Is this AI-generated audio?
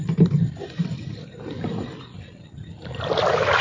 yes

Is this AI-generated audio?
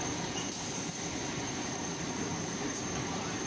yes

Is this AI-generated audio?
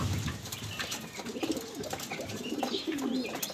yes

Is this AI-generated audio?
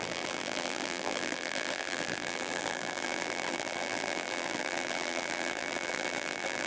yes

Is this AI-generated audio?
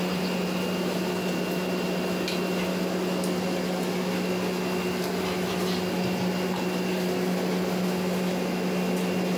no